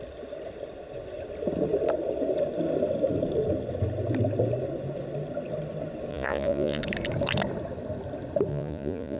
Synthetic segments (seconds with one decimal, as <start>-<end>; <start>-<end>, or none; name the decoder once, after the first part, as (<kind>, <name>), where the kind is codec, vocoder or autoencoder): 6.1-6.8 (vocoder, Vocos); 8.5-9.2